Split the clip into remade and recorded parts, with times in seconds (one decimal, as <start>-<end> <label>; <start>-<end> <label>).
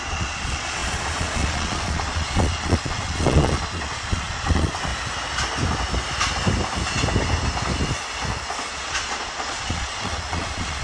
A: 0.0-4.9 remade; 4.9-8.7 recorded; 8.7-10.8 remade